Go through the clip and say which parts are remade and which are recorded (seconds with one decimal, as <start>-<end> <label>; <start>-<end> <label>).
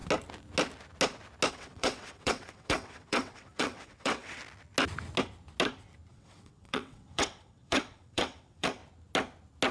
0.0-1.5 recorded; 1.5-4.4 remade; 4.4-6.1 recorded; 6.1-8.8 remade; 8.8-9.7 recorded